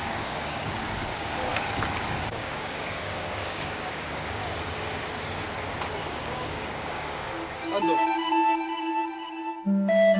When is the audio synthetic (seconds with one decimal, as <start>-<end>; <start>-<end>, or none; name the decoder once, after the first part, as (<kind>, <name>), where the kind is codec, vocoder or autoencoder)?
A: 0.0-1.5 (codec, DAC); 2.3-4.4; 6.0-10.2